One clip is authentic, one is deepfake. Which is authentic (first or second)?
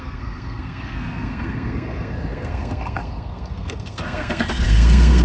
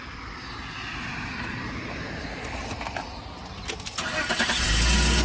second